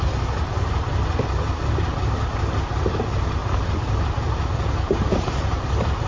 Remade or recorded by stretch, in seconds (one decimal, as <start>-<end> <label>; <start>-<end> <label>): 0.0-6.1 remade